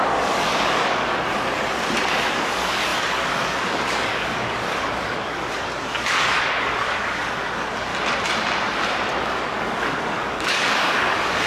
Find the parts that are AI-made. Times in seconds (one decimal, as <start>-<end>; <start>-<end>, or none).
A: 0.0-1.1; 2.3-7.9; 9.2-11.5

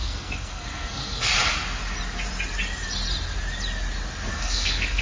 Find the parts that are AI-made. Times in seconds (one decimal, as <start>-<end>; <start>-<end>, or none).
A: 0.0-1.3; 4.3-5.0

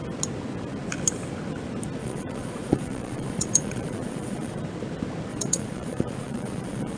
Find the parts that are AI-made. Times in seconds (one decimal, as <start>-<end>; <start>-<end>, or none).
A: 2.0-4.6; 5.3-7.0

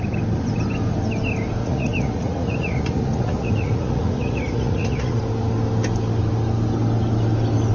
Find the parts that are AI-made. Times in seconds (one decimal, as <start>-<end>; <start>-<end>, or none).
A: 1.6-5.2

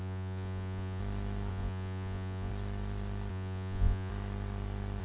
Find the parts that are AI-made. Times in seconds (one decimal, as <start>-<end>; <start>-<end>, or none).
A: 0.0-1.0; 1.5-2.5; 3.3-4.1

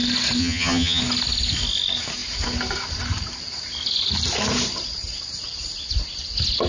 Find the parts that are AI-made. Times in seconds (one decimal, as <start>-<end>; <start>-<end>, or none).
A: 0.4-1.0

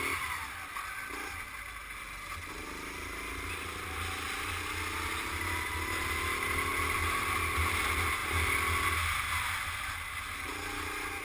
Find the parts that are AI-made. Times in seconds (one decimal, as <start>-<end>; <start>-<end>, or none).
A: none

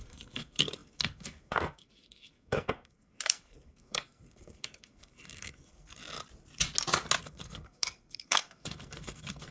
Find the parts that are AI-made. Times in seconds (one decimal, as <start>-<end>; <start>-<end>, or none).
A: 0.0-6.0; 7.2-9.5